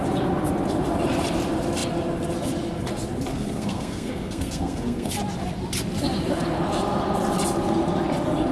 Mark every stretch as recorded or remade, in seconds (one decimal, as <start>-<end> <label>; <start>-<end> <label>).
0.0-3.3 recorded; 3.3-5.1 remade; 5.1-8.5 recorded